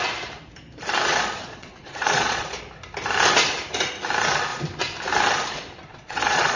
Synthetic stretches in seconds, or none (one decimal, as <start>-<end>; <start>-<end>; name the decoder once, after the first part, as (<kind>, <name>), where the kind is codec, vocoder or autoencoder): 1.1-2.6 (vocoder, Vocos); 5.9-6.6